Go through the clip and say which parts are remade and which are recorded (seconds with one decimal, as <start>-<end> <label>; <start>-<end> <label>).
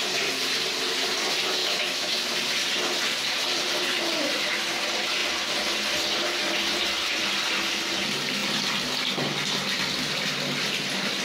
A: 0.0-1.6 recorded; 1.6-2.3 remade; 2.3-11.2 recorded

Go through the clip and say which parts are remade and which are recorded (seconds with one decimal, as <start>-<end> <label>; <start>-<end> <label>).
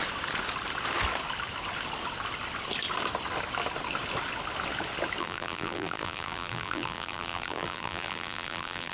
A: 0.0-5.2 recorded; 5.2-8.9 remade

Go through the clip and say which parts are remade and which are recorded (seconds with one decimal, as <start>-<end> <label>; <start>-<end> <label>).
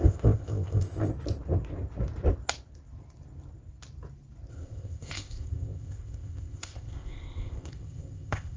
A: 0.0-1.1 remade; 1.1-4.5 recorded; 4.5-8.6 remade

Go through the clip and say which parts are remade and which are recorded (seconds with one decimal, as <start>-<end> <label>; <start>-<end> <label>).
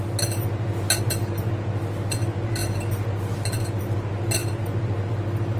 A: 0.0-5.6 recorded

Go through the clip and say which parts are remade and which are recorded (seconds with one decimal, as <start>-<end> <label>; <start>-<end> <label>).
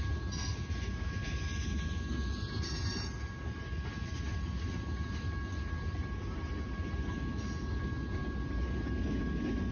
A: 0.0-9.7 recorded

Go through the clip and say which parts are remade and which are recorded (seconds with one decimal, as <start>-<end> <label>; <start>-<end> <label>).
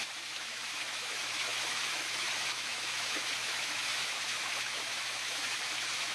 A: 0.0-6.1 remade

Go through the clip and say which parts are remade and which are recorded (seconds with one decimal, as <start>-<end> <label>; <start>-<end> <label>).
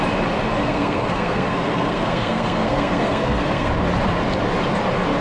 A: 0.0-0.6 recorded; 0.6-3.7 remade; 3.7-5.2 recorded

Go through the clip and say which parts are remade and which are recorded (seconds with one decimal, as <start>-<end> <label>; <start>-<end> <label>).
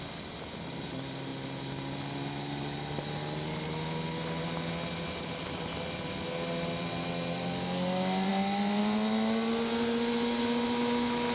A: 0.0-11.3 recorded